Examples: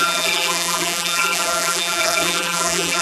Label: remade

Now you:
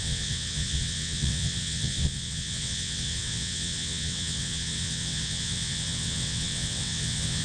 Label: remade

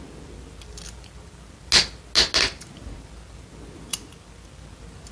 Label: recorded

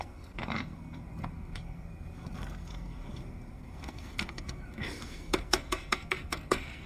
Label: remade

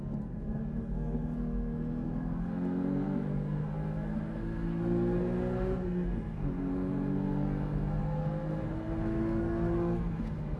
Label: remade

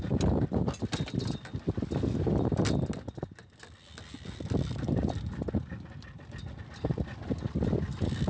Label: recorded